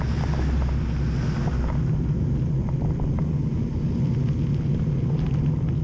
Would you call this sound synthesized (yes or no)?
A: no